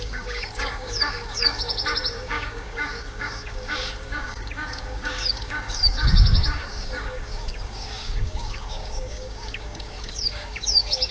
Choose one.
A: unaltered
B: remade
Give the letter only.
B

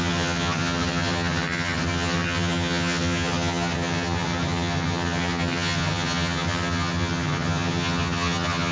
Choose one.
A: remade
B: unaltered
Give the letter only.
A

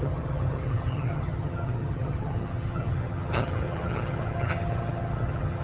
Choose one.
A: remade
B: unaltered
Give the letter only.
A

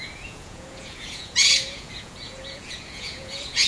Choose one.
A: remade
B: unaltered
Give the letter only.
A